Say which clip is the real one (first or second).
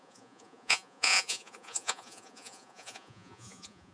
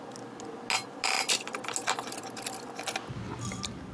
second